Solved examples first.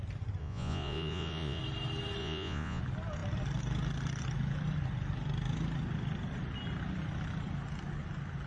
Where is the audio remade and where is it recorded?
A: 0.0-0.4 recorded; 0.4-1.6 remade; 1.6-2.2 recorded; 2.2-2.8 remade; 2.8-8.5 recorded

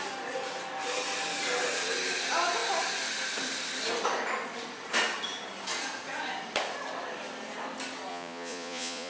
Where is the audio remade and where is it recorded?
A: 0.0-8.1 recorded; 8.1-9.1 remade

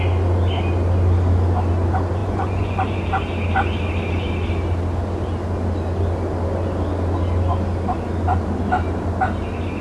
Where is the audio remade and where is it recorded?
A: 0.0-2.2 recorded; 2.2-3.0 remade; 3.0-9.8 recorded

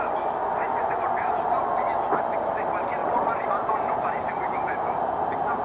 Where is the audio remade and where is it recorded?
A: 0.0-0.4 recorded; 0.4-1.4 remade; 1.4-3.0 recorded; 3.0-4.1 remade; 4.1-5.6 recorded